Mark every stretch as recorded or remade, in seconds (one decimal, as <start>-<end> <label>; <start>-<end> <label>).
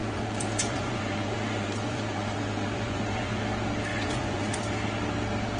0.0-3.4 remade; 3.4-3.9 recorded; 3.9-4.6 remade; 4.6-5.6 recorded